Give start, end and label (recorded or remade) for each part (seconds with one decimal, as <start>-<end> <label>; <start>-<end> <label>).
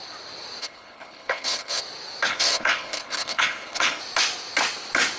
0.0-0.6 recorded; 0.6-1.8 remade; 1.8-2.3 recorded; 2.3-4.0 remade; 4.0-5.2 recorded